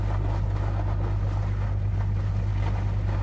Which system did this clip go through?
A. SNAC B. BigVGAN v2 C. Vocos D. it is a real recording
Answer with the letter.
D